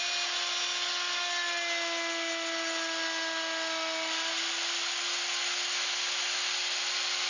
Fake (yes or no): no